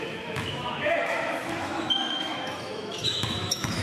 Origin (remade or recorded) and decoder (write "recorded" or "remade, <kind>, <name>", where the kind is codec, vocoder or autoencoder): remade, autoencoder, DAC-VAE